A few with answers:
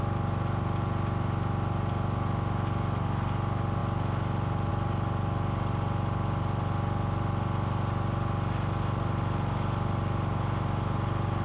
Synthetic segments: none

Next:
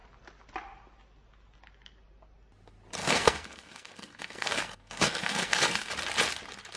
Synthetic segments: 3.0-5.9 (codec, SNAC)